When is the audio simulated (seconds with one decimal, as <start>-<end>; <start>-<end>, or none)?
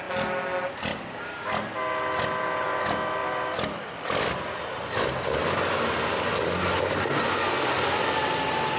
0.9-1.5